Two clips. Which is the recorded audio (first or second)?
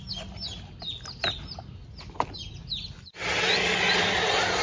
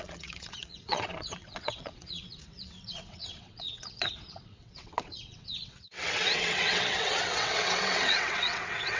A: first